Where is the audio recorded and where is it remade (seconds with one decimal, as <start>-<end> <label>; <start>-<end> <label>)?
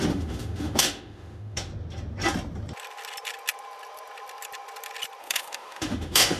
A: 0.0-1.7 remade; 1.7-5.2 recorded; 5.2-6.4 remade